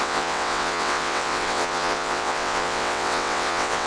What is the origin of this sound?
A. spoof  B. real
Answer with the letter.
A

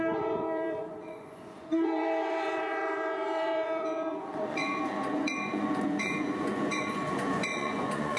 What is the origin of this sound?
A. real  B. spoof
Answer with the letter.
B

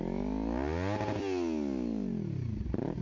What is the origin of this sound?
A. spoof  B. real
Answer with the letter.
B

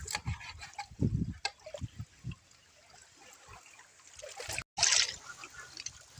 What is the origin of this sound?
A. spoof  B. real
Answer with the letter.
B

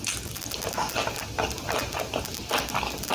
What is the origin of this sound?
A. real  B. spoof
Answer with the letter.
A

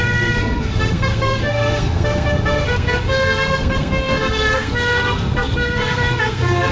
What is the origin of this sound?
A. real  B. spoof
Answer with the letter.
B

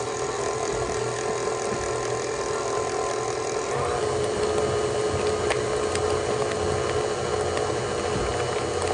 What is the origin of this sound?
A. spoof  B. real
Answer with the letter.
B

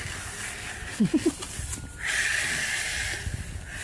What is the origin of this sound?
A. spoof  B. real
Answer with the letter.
B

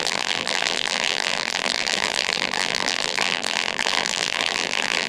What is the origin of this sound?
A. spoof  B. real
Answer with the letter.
A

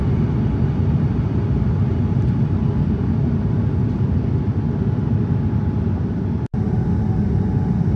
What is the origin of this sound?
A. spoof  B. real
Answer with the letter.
B